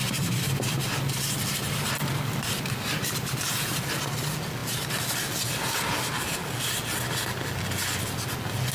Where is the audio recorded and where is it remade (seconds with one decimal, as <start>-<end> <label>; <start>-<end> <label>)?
0.0-3.9 remade; 3.9-8.7 recorded